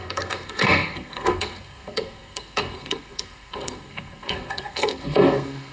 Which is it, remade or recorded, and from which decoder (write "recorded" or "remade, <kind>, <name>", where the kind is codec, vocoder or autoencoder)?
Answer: remade, codec, SNAC